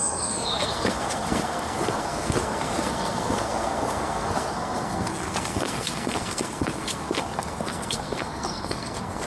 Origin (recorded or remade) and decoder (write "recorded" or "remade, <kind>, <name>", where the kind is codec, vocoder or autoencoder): remade, codec, SNAC